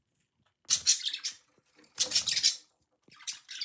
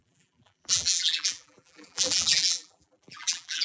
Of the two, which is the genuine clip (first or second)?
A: first